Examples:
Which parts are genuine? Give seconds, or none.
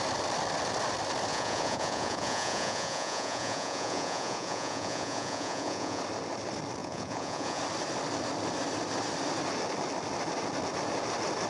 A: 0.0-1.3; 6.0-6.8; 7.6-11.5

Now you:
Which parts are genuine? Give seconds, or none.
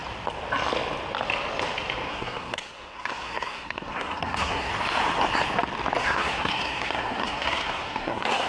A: 0.0-2.1; 4.7-6.0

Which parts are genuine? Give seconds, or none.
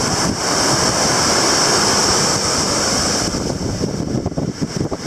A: 0.0-2.0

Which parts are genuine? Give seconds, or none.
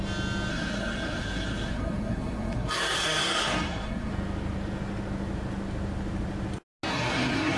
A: 0.0-0.5; 4.1-6.9